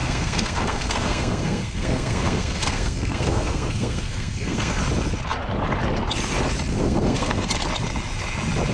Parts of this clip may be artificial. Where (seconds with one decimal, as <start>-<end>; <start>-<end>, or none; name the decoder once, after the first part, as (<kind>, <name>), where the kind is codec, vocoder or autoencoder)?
0.0-4.8 (codec, SNAC); 6.7-7.5